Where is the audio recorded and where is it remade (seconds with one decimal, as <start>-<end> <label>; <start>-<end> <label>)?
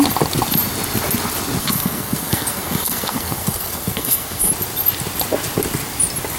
0.0-1.6 recorded; 1.6-4.5 remade; 4.5-6.4 recorded